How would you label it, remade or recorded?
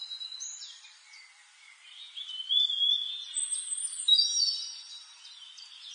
recorded